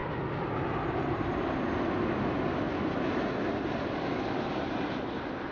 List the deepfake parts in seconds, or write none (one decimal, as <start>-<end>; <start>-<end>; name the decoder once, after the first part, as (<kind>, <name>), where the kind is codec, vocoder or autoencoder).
none